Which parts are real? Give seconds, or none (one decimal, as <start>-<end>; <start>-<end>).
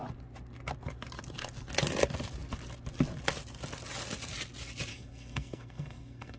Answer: 0.0-4.9